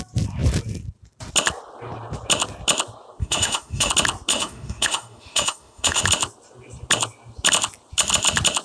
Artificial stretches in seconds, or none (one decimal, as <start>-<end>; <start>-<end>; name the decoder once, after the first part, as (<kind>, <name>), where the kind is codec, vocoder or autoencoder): 3.2-3.9 (autoencoder, DAC-VAE); 4.3-6.0